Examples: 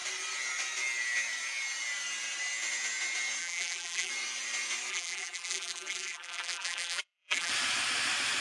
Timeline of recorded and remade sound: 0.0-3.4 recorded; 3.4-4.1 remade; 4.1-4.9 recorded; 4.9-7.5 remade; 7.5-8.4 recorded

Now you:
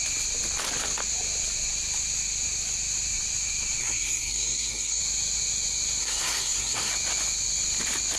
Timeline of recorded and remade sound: 0.0-3.8 recorded; 3.8-5.0 remade; 5.0-6.0 recorded; 6.0-6.9 remade; 6.9-8.2 recorded